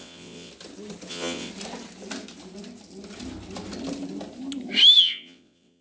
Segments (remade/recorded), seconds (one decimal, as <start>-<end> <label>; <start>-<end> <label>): 0.0-0.5 remade; 0.5-1.1 recorded; 1.1-1.5 remade; 1.5-5.0 recorded; 5.0-5.8 remade